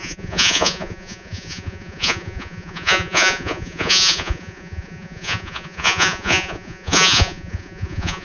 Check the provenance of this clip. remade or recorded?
remade